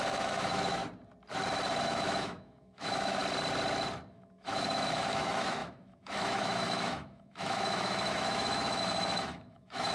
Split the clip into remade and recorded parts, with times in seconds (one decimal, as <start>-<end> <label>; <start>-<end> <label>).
0.0-0.8 remade; 0.8-1.8 recorded; 1.8-3.2 remade; 3.2-4.1 recorded; 4.1-9.9 remade